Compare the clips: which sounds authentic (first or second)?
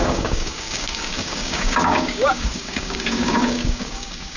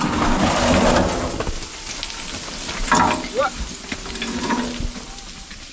second